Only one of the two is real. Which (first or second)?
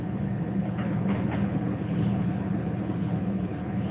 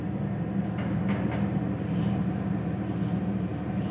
second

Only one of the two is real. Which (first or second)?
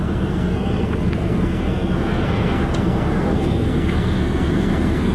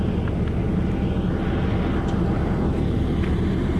second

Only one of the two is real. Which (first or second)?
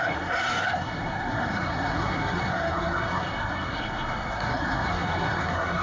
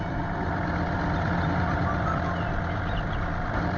second